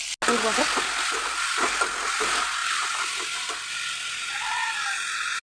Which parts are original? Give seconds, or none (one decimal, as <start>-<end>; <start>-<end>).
0.0-5.5